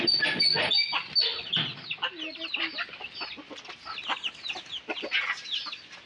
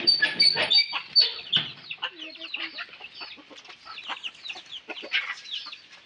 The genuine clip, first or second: first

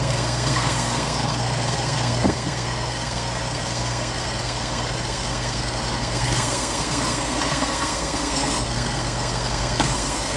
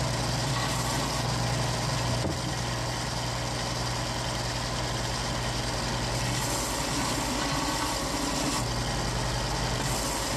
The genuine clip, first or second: second